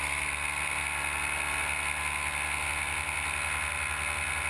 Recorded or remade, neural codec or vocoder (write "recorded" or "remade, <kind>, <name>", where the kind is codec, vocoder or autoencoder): recorded